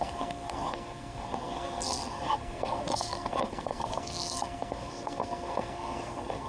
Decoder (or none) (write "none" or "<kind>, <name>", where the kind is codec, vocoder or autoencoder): codec, SNAC